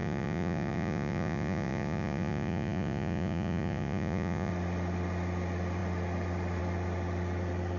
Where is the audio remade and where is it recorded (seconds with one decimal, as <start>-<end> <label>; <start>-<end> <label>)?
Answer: 0.0-4.5 remade; 4.5-7.8 recorded